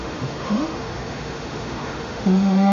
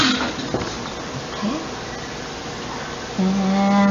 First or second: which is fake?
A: first